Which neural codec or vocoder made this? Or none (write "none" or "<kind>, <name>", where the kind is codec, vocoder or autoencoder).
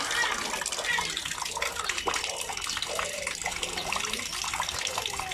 none